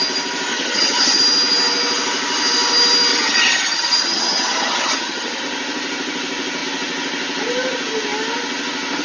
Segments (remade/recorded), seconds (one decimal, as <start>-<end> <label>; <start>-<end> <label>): 0.0-0.5 recorded; 0.5-1.2 remade; 1.2-3.1 recorded; 3.1-5.4 remade; 5.4-9.0 recorded